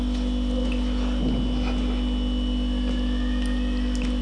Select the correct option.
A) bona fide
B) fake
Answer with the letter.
A